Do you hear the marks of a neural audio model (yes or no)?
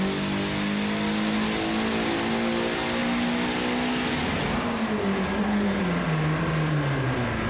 no